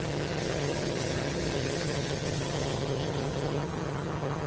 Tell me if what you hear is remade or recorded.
remade